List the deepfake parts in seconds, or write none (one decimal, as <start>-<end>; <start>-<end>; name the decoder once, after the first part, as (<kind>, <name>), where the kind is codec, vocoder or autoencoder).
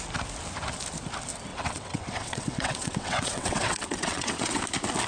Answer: 1.5-4.6 (vocoder, WaveNeXt)